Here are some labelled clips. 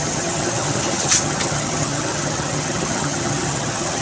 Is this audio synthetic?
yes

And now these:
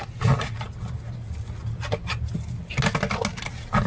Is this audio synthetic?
no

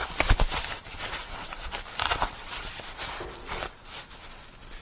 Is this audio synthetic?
no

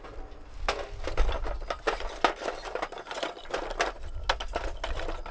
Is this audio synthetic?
no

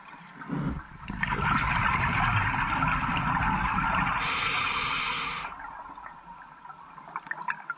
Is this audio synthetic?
no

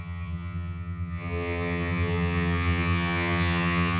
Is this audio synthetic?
yes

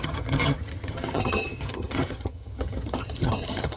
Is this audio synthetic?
yes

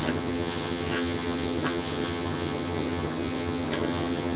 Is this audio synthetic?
yes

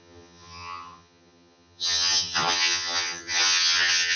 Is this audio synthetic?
yes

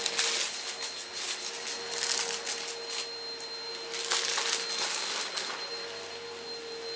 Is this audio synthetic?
no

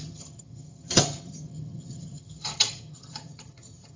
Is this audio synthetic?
yes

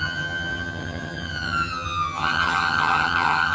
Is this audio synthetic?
yes